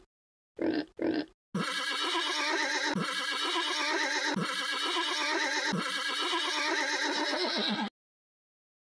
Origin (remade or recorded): recorded